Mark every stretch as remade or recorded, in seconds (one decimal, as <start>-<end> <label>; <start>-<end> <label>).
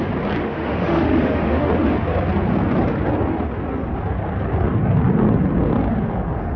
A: 0.0-0.4 recorded; 0.4-1.7 remade; 1.7-6.6 recorded